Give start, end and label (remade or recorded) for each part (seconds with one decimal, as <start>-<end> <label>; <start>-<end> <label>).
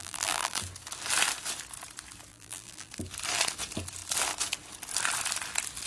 0.0-0.6 remade; 0.6-2.3 recorded; 2.3-2.9 remade; 2.9-5.9 recorded